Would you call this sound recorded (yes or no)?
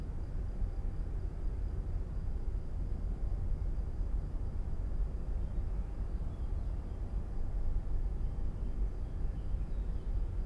yes